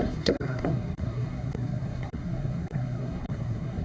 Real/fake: fake